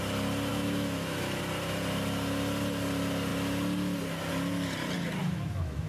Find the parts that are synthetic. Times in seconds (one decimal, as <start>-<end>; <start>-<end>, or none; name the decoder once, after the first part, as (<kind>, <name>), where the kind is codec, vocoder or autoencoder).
0.5-1.4 (autoencoder, DAC-VAE); 5.2-5.9